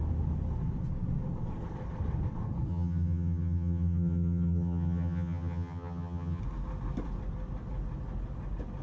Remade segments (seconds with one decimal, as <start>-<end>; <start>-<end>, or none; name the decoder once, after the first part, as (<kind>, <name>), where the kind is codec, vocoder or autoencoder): 2.7-6.4 (vocoder, HiFi-GAN)